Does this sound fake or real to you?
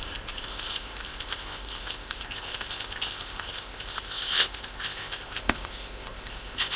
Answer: fake